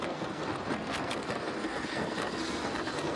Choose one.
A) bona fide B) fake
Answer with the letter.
B